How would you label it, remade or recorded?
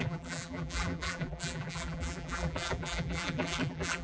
remade